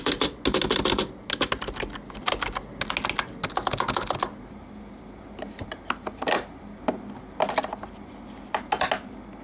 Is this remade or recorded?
recorded